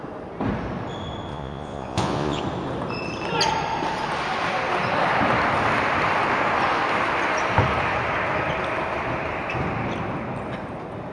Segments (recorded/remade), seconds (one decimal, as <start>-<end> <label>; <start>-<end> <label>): 0.0-1.3 recorded; 1.3-2.4 remade; 2.4-11.1 recorded